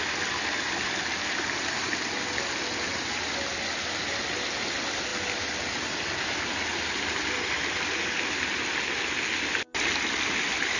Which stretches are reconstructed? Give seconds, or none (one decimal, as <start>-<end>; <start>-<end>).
none